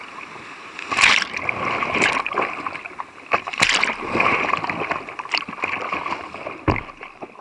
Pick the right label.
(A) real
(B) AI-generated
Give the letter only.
A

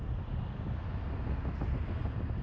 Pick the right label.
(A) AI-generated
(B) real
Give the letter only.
B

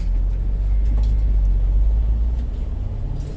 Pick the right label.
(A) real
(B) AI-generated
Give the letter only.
A